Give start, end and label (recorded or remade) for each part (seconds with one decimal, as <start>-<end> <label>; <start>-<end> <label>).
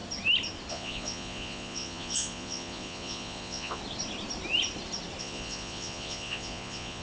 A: 0.0-0.7 recorded; 0.7-3.8 remade; 3.8-5.2 recorded; 5.2-7.0 remade